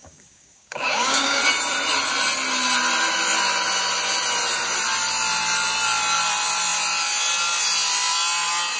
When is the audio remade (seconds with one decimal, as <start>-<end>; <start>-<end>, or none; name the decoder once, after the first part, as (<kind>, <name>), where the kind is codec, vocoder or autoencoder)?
0.0-1.4 (codec, DAC)